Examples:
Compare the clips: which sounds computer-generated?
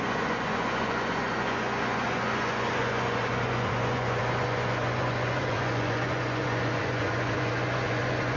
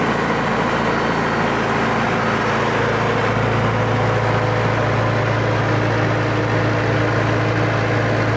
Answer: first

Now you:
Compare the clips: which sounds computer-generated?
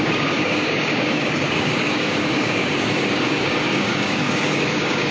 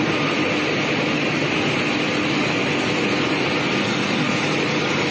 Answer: first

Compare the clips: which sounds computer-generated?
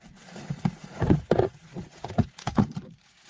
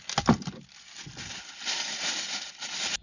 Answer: first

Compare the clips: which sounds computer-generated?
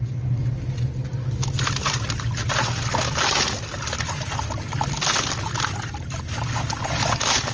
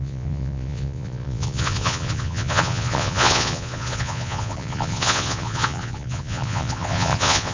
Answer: second